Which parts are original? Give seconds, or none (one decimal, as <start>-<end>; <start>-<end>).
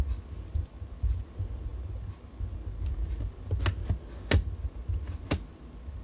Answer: 0.0-6.0